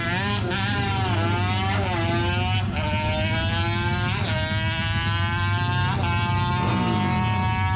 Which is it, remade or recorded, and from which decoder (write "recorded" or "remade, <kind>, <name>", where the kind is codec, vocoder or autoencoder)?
recorded